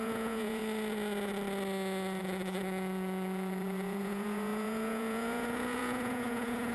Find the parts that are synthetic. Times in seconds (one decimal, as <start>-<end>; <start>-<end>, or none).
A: 0.0-0.6; 2.2-6.7